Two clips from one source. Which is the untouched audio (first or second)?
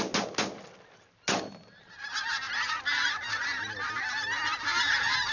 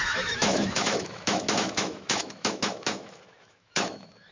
first